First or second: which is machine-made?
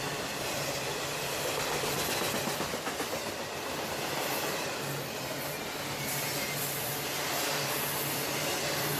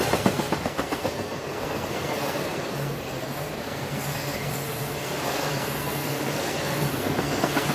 second